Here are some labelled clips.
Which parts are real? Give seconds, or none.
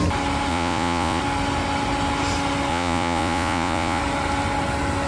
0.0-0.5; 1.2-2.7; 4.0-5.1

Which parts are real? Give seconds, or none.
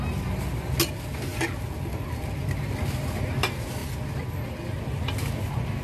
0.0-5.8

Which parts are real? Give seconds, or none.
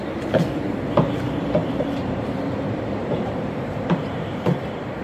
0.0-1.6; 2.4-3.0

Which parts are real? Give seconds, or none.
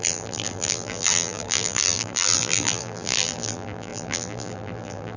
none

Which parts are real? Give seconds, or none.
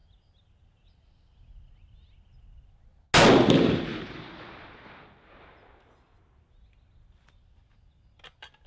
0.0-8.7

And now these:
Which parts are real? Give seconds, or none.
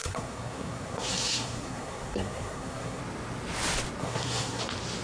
3.0-4.0; 4.6-5.0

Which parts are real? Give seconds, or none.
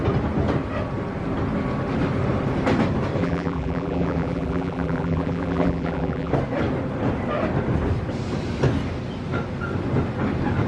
0.0-3.2; 6.3-10.7